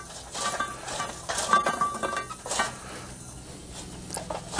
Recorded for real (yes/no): yes